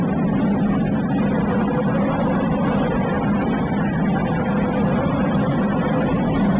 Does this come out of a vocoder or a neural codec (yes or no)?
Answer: no